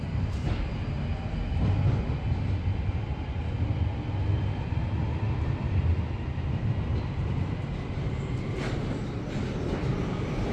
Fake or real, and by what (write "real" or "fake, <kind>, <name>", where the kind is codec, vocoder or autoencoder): real